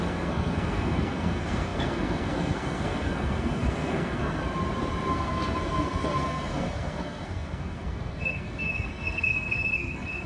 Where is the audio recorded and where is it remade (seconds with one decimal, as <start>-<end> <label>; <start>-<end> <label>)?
0.0-4.4 remade; 4.4-5.1 recorded; 5.1-10.3 remade